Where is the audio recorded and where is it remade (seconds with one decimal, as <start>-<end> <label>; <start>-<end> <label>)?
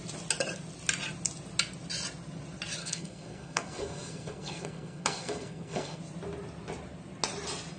0.0-2.8 recorded; 2.8-6.0 remade; 6.0-7.8 recorded